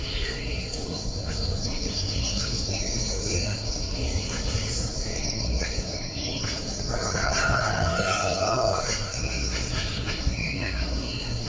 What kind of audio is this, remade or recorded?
remade